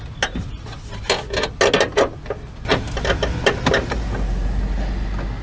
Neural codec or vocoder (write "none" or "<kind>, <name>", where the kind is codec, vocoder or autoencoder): none